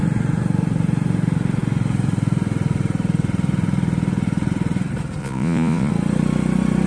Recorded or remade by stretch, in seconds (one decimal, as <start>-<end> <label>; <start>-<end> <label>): 0.0-5.2 recorded; 5.2-5.9 remade; 5.9-6.9 recorded